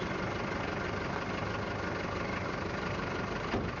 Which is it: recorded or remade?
recorded